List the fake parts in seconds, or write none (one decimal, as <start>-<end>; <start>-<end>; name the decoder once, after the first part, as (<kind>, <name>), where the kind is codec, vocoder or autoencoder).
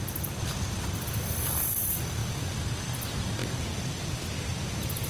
none